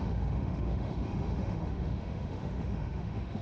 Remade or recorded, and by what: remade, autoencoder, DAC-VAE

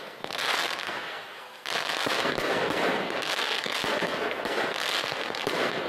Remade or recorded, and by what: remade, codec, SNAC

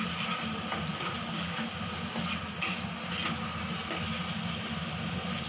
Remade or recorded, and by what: recorded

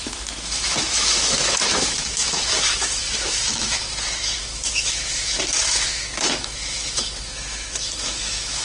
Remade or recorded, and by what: remade, autoencoder, DAC-VAE